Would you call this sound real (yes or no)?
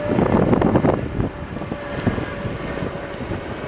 yes